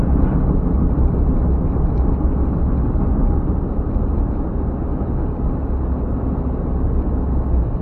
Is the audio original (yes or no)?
yes